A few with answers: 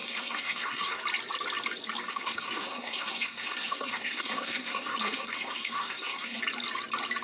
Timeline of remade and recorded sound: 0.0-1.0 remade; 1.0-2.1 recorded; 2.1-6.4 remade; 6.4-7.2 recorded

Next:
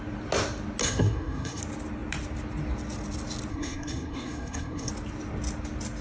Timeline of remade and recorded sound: 0.0-0.8 recorded; 0.8-1.6 remade; 1.6-3.5 recorded; 3.5-4.9 remade; 4.9-6.0 recorded

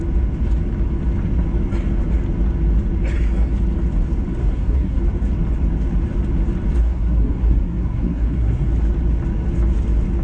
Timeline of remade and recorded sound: 0.0-4.4 recorded; 4.4-5.0 remade; 5.0-6.8 recorded; 6.8-8.7 remade; 8.7-10.2 recorded

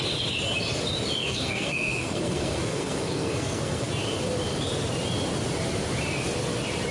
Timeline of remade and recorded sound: 0.0-1.2 recorded; 1.2-3.9 remade; 3.9-6.9 recorded

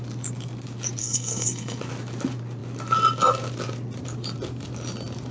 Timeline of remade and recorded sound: 0.0-1.0 recorded; 1.0-1.8 remade; 1.8-5.3 recorded

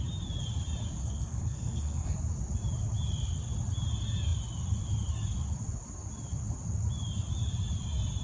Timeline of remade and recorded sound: 0.0-1.0 recorded; 1.0-2.2 remade; 2.2-8.2 recorded